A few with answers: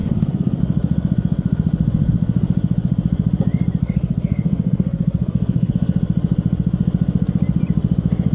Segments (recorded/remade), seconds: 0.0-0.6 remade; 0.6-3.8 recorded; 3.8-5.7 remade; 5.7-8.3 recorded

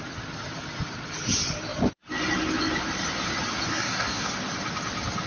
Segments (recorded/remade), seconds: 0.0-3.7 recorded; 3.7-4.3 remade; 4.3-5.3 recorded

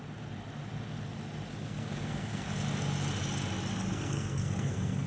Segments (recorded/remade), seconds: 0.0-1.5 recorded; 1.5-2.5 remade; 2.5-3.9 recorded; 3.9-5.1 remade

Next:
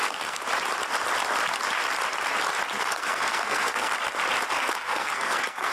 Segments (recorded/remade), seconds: 0.0-0.4 remade; 0.4-2.8 recorded; 2.8-3.9 remade; 3.9-4.5 recorded; 4.5-5.7 remade

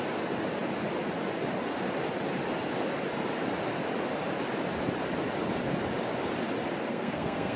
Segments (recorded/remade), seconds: 0.0-6.9 recorded; 6.9-7.6 remade

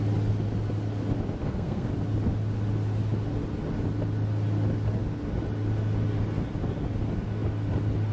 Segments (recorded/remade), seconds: 0.0-1.4 recorded; 1.4-1.9 remade; 1.9-8.1 recorded

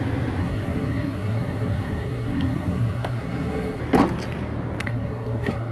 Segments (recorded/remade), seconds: 0.0-0.4 recorded; 0.4-3.8 remade; 3.8-4.8 recorded; 4.8-5.7 remade